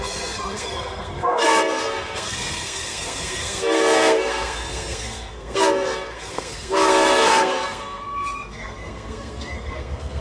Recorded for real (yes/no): no